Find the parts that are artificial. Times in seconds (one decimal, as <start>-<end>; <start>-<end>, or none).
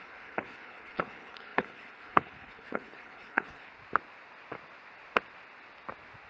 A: 0.0-3.7